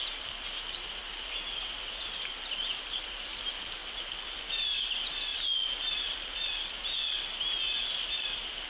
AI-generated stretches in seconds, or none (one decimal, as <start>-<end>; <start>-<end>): none